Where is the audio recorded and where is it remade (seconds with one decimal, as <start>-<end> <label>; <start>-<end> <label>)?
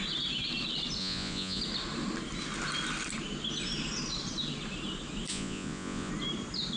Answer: 0.0-1.0 recorded; 1.0-1.6 remade; 1.6-5.3 recorded; 5.3-6.1 remade; 6.1-6.8 recorded